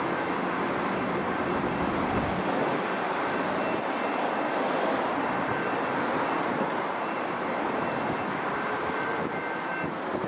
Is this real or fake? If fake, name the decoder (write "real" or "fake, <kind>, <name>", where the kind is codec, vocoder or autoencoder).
fake, vocoder, BigVGAN v2